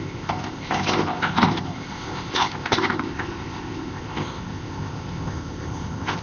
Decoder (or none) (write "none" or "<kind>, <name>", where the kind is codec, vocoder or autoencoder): codec, ZipCodec